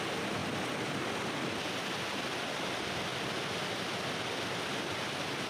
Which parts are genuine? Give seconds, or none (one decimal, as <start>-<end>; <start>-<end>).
0.0-5.5